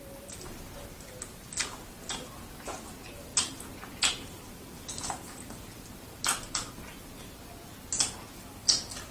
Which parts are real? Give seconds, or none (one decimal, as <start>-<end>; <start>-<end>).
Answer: 0.0-9.1